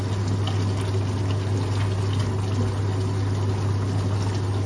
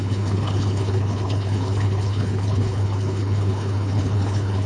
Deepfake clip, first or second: second